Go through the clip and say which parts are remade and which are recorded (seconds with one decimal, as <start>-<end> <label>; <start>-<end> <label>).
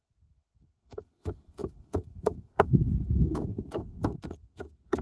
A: 0.0-5.0 remade